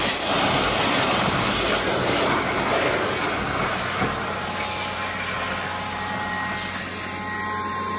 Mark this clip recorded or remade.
recorded